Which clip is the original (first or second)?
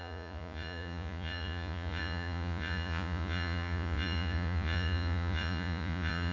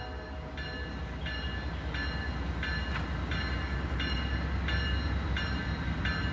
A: second